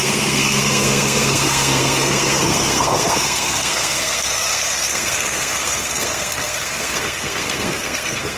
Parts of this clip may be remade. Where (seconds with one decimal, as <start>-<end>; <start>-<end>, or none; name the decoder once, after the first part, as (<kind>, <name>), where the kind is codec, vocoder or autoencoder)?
0.0-8.4 (codec, SNAC)